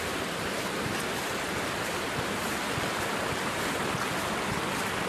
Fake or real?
real